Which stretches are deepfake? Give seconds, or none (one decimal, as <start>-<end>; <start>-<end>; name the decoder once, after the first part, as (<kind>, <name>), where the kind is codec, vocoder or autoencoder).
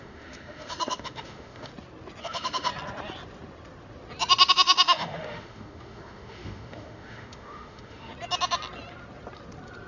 0.0-1.7 (autoencoder, DAC-VAE); 2.2-2.7; 4.5-8.1